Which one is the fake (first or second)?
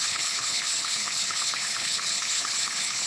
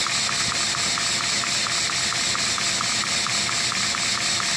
first